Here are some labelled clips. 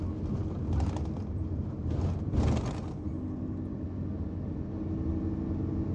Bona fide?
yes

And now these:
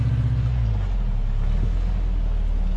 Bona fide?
yes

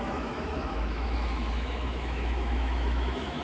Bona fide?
no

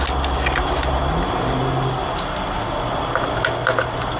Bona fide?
yes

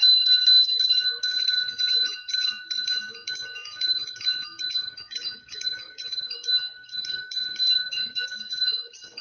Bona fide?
no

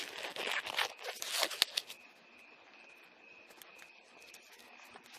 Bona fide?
yes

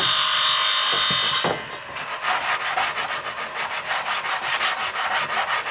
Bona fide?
yes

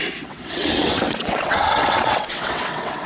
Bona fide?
no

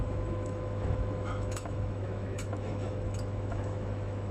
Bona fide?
no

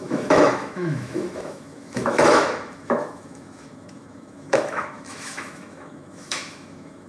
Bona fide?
no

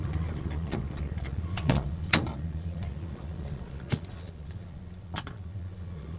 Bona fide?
no